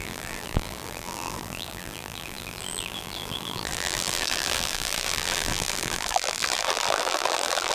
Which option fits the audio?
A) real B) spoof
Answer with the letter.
B